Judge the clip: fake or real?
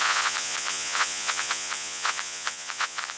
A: fake